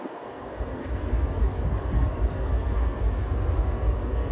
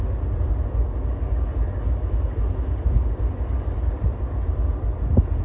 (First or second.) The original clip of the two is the second